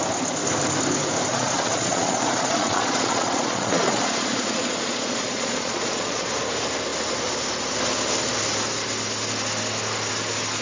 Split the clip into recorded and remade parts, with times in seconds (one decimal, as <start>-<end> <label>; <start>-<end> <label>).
0.0-1.3 recorded; 1.3-6.3 remade; 6.3-10.6 recorded